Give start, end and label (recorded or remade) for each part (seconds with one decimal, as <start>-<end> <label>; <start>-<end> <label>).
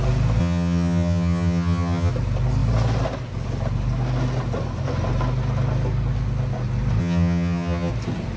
0.0-0.4 recorded; 0.4-2.1 remade; 2.1-7.0 recorded; 7.0-7.9 remade; 7.9-8.4 recorded